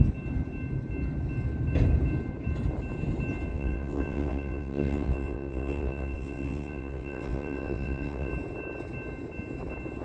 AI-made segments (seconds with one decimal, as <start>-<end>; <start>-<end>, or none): 3.5-8.3